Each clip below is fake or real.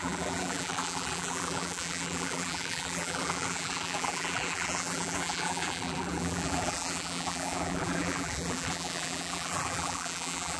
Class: fake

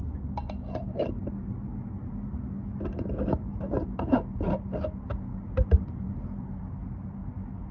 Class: real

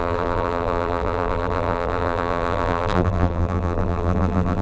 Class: fake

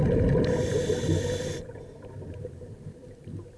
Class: real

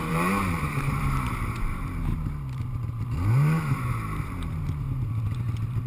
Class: fake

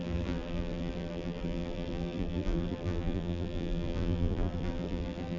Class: fake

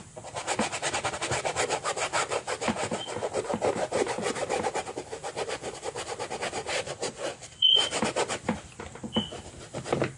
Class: fake